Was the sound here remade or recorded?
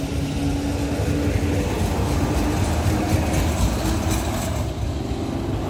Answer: recorded